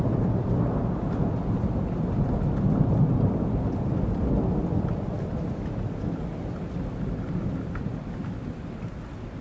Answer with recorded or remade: recorded